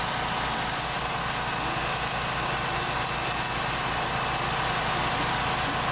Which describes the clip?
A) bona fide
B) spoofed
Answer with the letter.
A